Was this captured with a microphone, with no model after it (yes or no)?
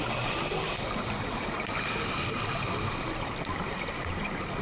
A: yes